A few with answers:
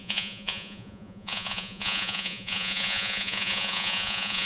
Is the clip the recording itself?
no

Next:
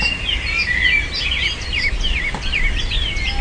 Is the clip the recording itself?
yes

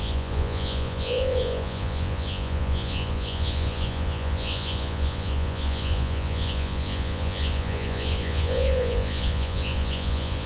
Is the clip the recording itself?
no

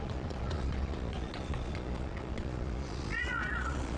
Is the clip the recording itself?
no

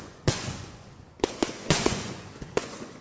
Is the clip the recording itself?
no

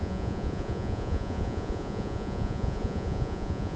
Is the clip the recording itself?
no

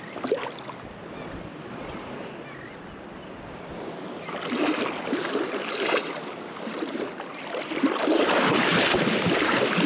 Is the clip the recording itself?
yes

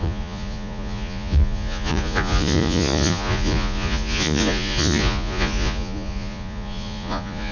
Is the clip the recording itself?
no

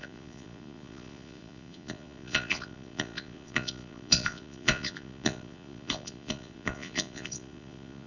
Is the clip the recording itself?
no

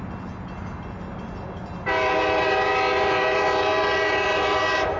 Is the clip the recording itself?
yes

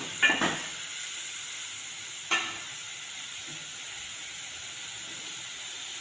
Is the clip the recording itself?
yes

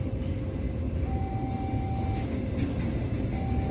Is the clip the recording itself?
yes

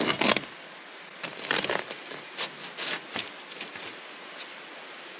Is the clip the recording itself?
yes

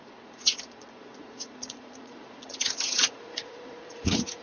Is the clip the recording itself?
no